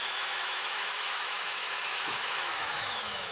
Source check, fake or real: fake